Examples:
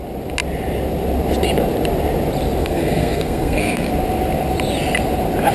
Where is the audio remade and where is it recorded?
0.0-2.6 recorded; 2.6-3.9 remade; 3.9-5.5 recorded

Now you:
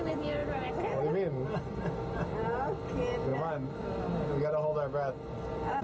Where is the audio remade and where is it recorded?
0.0-5.8 recorded

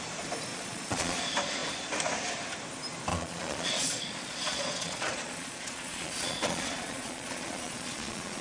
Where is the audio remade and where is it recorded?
0.0-0.5 recorded; 0.5-1.2 remade; 1.2-3.1 recorded; 3.1-8.4 remade

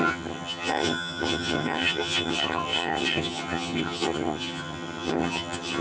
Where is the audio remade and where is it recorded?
0.0-5.8 remade

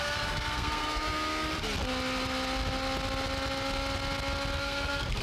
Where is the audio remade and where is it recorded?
0.0-1.5 remade; 1.5-4.6 recorded; 4.6-5.2 remade

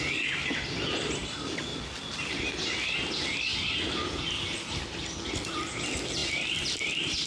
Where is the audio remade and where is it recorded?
0.0-6.2 recorded; 6.2-6.8 remade; 6.8-7.3 recorded

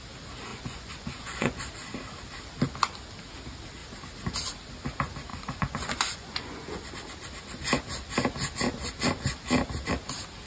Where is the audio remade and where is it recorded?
0.0-0.5 recorded; 0.5-1.6 remade; 1.6-5.3 recorded; 5.3-6.9 remade; 6.9-10.5 recorded